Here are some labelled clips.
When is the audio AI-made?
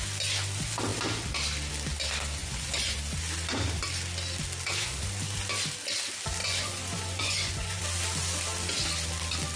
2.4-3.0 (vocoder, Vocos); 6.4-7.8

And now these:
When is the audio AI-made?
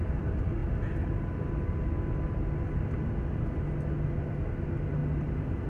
none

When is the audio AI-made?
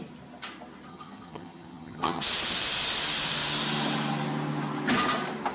0.9-2.2 (vocoder, HiFi-GAN)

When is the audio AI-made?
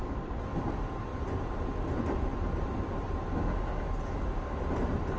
0.0-0.7 (vocoder, BigVGAN v2)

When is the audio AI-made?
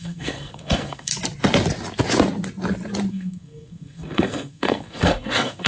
0.0-1.1 (codec, SNAC); 3.1-5.7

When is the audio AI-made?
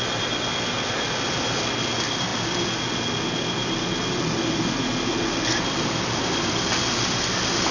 none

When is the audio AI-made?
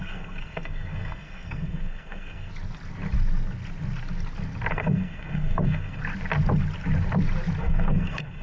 0.0-2.5 (codec, SNAC); 4.7-6.0; 7.6-8.4